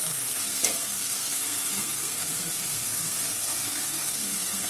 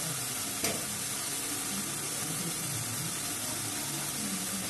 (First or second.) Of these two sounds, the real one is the second